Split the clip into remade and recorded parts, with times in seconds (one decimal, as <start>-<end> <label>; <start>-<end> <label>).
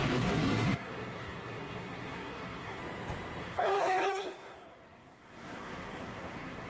0.0-2.8 remade; 2.8-3.4 recorded; 3.4-6.7 remade